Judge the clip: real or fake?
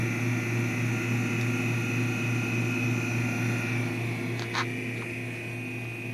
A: real